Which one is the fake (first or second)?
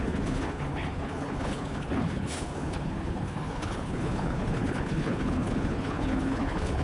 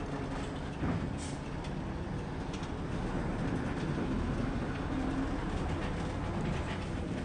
first